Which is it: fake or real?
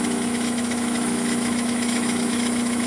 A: fake